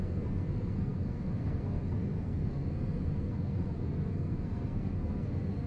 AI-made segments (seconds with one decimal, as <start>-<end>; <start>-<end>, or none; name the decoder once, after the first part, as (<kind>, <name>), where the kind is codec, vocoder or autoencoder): 0.0-5.7 (codec, SNAC)